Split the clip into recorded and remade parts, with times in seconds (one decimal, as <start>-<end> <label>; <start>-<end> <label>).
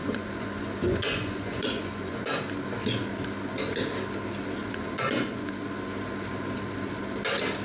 0.0-2.4 remade; 2.4-4.6 recorded; 4.6-5.5 remade; 5.5-7.6 recorded